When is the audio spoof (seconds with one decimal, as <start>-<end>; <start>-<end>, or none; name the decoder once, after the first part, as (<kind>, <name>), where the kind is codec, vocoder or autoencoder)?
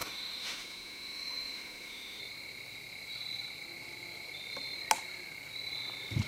0.0-2.2 (autoencoder, DAC-VAE)